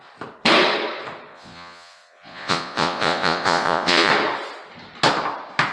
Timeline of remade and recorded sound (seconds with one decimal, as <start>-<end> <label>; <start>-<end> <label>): 0.0-1.3 recorded; 1.3-4.1 remade; 4.1-5.7 recorded